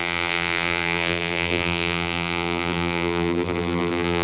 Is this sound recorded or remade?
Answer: remade